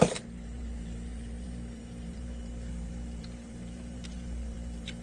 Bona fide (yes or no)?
no